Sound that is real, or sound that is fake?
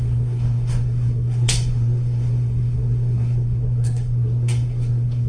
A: fake